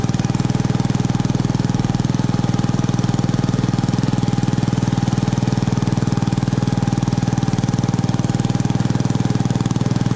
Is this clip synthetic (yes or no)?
no